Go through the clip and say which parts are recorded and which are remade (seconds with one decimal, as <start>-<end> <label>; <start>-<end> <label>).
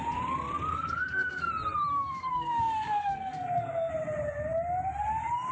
0.0-0.7 recorded; 0.7-1.5 remade; 1.5-1.9 recorded; 1.9-3.9 remade; 3.9-5.5 recorded